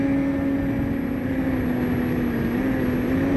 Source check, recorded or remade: recorded